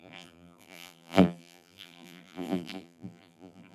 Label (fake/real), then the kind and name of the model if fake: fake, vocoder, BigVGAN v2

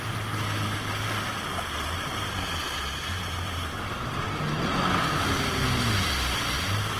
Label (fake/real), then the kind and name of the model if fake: real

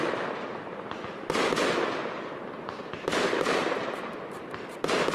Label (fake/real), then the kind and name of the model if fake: real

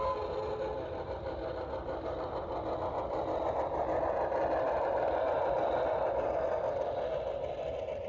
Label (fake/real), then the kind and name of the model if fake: real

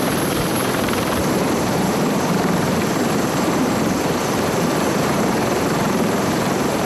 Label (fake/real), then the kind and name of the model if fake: fake, vocoder, BigVGAN v2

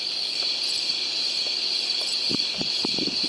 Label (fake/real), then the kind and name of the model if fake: fake, vocoder, BigVGAN v2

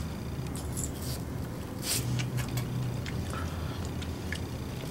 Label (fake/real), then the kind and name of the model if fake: real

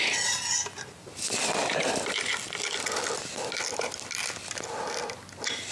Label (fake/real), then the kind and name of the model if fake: real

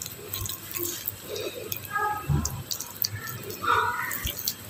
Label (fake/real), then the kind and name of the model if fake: real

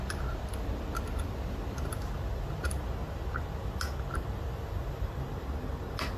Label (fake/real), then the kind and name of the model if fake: real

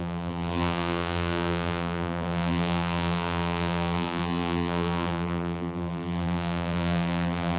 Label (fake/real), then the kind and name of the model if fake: fake, vocoder, BigVGAN v2